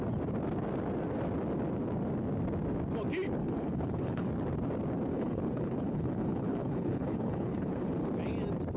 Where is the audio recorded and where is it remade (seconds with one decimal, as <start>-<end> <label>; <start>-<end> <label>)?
0.0-3.4 recorded; 3.4-4.3 remade; 4.3-5.1 recorded; 5.1-7.9 remade; 7.9-8.8 recorded